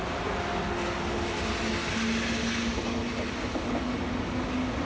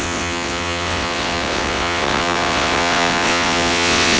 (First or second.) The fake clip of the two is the second